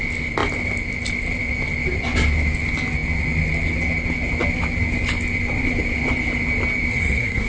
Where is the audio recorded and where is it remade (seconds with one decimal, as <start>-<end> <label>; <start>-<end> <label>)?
0.0-6.9 recorded; 6.9-7.5 remade